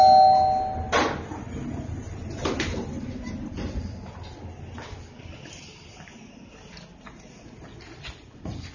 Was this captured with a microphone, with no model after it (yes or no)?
yes